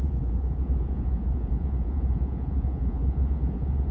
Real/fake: fake